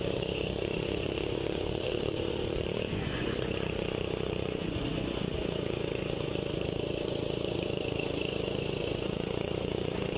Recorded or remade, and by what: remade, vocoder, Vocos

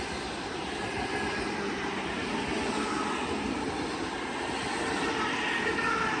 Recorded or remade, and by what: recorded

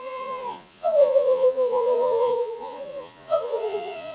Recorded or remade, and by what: remade, vocoder, Vocos